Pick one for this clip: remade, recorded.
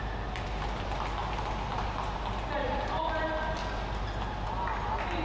recorded